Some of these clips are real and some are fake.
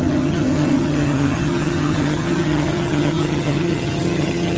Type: fake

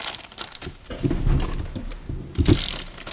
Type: real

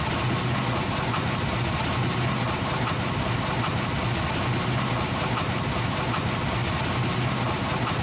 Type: real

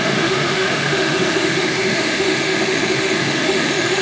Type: fake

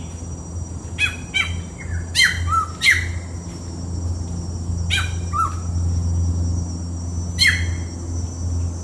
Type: real